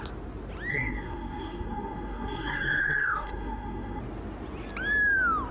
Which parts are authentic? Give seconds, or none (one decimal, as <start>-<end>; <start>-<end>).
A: 0.0-0.7; 4.0-5.5